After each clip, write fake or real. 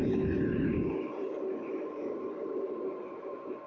real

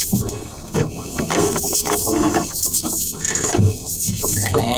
fake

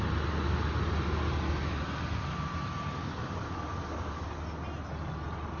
real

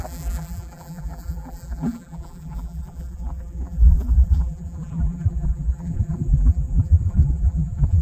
fake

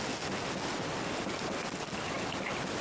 real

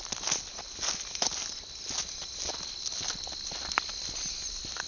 real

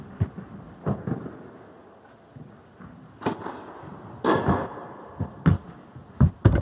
real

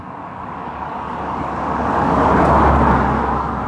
fake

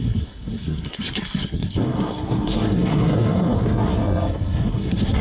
fake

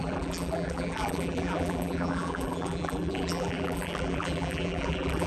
fake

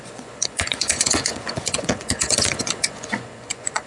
fake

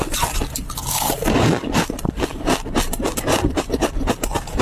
real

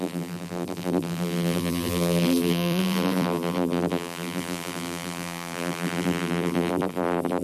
fake